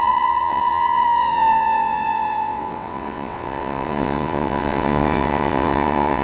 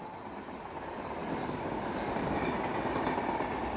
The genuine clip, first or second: second